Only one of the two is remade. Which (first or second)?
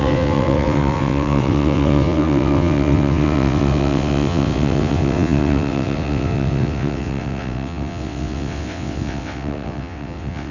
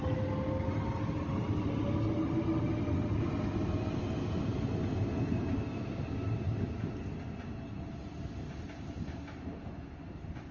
first